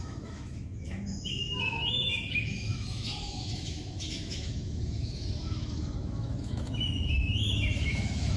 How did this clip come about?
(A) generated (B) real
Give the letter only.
A